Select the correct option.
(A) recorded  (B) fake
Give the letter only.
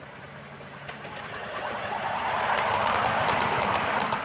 A